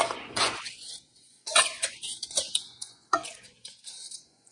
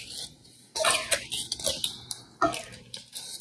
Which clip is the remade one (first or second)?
first